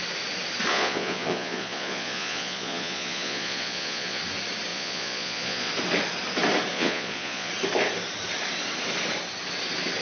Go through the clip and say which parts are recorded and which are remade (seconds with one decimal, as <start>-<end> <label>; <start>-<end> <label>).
0.0-0.7 recorded; 0.7-4.2 remade; 4.2-4.7 recorded; 4.7-5.7 remade; 5.7-6.7 recorded; 6.7-7.5 remade; 7.5-10.0 recorded